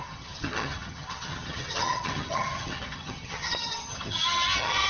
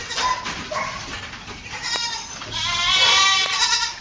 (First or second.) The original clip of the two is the second